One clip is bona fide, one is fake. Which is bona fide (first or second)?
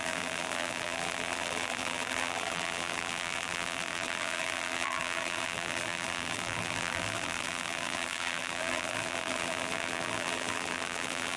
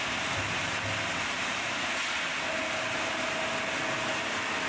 second